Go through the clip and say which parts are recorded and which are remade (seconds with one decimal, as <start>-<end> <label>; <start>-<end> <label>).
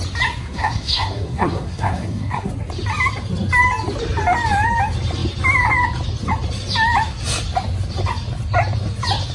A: 0.0-0.4 recorded; 0.4-2.5 remade; 2.5-9.3 recorded